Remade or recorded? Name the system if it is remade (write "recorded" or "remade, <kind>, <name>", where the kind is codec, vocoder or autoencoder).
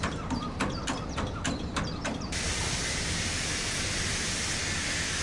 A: remade, vocoder, BigVGAN v2